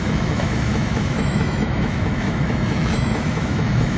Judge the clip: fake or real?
fake